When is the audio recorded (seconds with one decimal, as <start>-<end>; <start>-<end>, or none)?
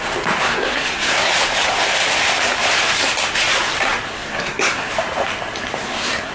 0.0-0.5; 1.3-4.1; 4.9-5.8